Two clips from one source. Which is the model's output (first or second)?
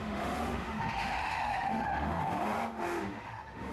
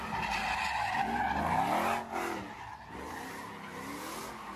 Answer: first